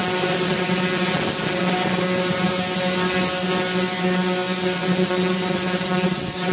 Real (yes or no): yes